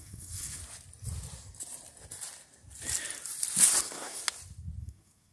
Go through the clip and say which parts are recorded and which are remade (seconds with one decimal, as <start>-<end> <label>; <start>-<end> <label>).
0.0-0.6 remade; 0.6-3.8 recorded; 3.8-4.2 remade; 4.2-4.8 recorded; 4.8-5.3 remade

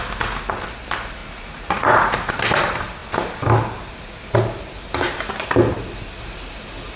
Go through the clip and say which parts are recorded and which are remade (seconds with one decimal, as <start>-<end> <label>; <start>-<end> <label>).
0.0-1.2 recorded; 1.2-2.4 remade; 2.4-7.0 recorded

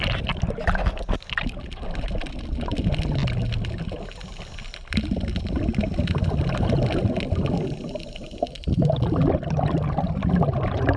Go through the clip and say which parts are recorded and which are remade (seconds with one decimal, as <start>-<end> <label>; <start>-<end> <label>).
0.0-11.0 recorded